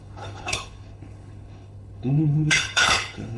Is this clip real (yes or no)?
no